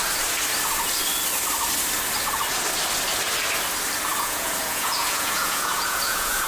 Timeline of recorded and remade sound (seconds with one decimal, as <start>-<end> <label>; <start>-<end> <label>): 0.0-4.1 recorded; 4.1-6.5 remade